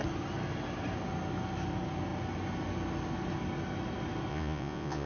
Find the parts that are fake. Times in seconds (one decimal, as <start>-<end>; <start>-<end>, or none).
4.3-5.1